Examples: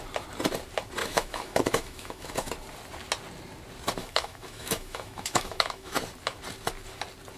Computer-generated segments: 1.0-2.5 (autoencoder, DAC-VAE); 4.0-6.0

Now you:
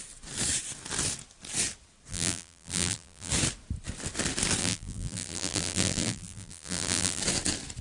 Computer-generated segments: 2.1-3.3 (vocoder, BigVGAN v2); 4.6-7.2

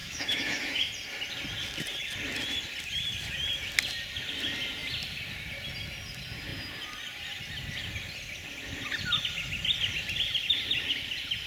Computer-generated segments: 0.0-0.9 (autoencoder, DAC-VAE)

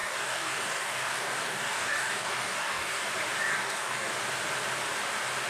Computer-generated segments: 0.0-3.1 (codec, DAC); 3.5-4.1

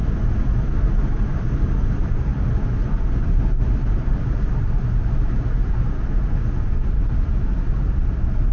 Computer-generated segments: none

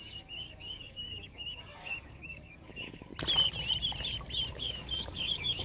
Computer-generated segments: 0.0-3.1 (codec, DAC); 4.5-5.6